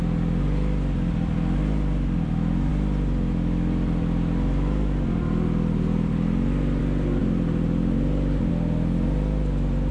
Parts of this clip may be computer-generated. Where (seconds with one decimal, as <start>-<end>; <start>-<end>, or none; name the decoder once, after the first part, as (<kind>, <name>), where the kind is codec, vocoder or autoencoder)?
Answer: none